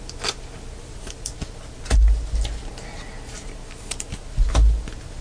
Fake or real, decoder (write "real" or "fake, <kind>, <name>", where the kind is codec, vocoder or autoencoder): real